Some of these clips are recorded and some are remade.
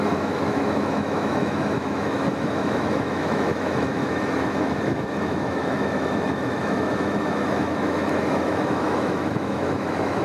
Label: remade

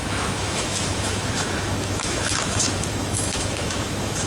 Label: remade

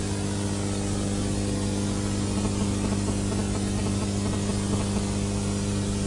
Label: recorded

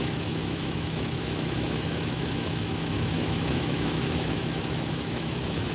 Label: remade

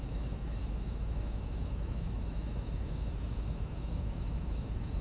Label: remade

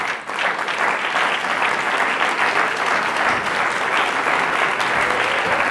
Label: recorded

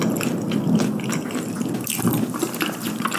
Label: recorded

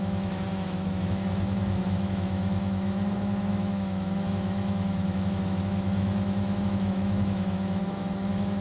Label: remade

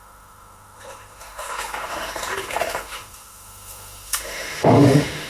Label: remade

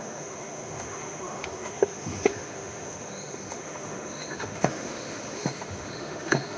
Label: remade